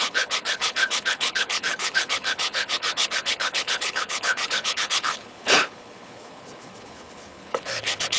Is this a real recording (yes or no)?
no